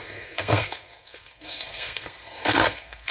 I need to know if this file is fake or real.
fake